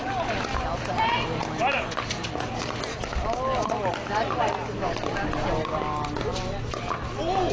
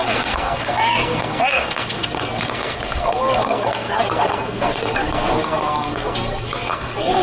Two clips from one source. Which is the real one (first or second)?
first